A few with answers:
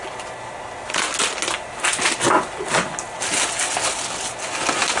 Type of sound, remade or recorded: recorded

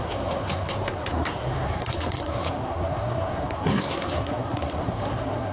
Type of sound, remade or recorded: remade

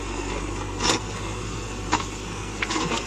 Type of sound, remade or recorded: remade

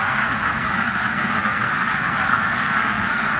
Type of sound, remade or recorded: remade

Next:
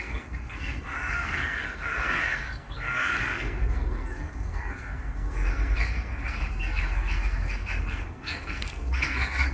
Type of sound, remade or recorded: remade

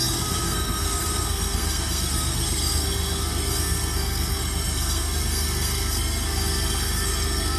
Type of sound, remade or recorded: remade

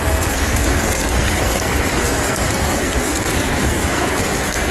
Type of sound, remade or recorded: remade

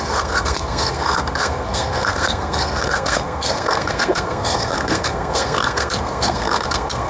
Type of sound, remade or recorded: remade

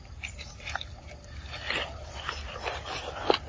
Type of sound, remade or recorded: recorded